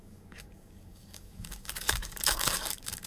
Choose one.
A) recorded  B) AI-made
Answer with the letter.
B